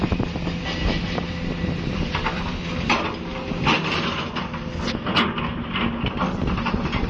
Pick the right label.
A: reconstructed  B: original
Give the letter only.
B